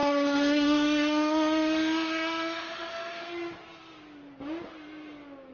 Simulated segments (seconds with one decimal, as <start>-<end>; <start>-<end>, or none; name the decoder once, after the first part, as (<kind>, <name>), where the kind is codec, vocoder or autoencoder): 0.0-3.3 (autoencoder, DAC-VAE)